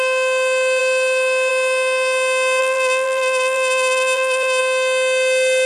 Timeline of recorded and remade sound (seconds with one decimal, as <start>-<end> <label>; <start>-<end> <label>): 0.0-2.6 recorded; 2.6-4.6 remade; 4.6-5.7 recorded